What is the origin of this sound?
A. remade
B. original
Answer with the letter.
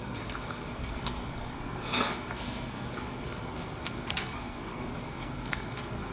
A